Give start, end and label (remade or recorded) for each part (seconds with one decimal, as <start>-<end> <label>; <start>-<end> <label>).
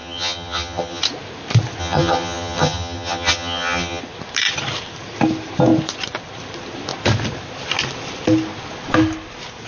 0.0-1.0 remade; 1.0-1.8 recorded; 1.8-4.0 remade; 4.0-9.7 recorded